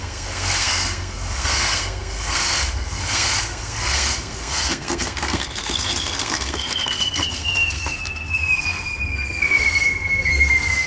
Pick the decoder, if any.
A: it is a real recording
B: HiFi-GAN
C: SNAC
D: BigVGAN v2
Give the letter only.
C